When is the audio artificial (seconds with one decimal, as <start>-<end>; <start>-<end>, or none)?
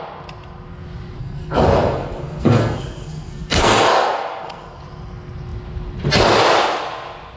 1.2-4.8